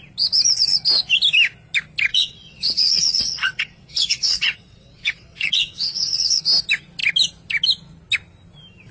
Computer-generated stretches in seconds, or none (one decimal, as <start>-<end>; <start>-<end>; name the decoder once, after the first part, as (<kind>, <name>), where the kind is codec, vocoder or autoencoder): 2.1-6.4 (vocoder, WaveNeXt)